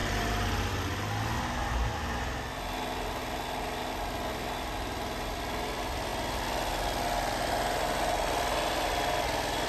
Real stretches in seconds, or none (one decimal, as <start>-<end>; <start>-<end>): 0.7-9.7